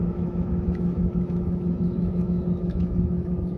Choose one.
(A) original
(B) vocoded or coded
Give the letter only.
B